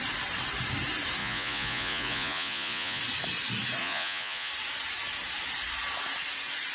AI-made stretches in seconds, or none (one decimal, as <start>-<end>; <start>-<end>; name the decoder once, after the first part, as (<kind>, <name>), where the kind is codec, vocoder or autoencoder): 1.2-3.0 (vocoder, Vocos); 3.8-4.5